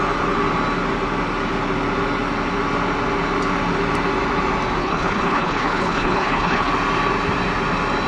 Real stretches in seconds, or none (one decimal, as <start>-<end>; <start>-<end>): 0.0-4.8; 6.7-8.1

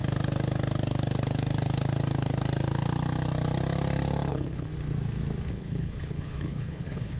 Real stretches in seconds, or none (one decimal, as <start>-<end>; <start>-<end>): 0.0-4.3; 4.7-5.5